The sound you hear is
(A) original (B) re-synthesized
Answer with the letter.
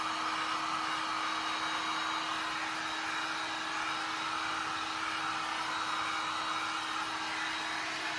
A